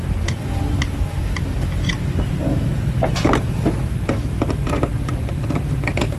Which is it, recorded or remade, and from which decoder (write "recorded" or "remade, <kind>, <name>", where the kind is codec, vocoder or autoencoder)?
recorded